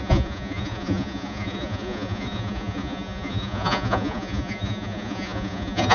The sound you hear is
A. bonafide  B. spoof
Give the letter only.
B